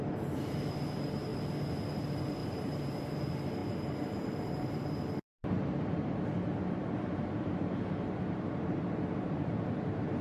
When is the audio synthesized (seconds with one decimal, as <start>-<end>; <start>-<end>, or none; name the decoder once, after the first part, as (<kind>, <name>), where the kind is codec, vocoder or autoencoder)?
0.0-1.3 (vocoder, BigVGAN v2); 2.0-10.2